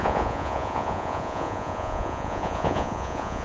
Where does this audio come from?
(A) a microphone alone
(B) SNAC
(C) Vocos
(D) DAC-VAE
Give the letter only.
C